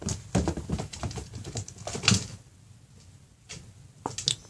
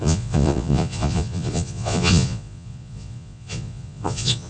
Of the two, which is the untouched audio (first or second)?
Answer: first